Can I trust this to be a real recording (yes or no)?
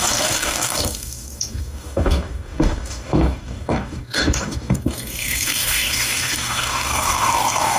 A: no